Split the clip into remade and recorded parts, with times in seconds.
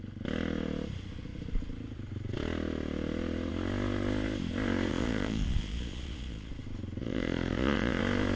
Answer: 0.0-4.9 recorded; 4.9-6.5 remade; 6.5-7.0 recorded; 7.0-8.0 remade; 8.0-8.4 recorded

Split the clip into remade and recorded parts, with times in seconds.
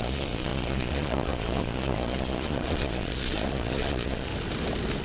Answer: 0.0-4.3 remade; 4.3-5.0 recorded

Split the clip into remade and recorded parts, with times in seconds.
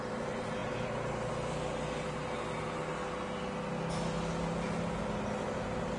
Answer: 0.0-6.0 recorded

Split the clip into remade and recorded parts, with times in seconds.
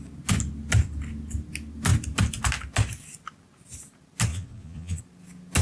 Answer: 0.0-4.3 recorded; 4.3-5.0 remade; 5.0-5.6 recorded